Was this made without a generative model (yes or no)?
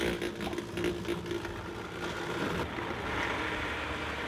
yes